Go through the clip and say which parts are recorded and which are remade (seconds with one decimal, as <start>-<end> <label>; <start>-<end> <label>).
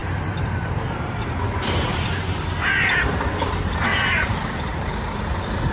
0.0-3.4 remade; 3.4-3.9 recorded; 3.9-5.7 remade